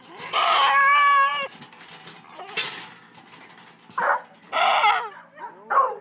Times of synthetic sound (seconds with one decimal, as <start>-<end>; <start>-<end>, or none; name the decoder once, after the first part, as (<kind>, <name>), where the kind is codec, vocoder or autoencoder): none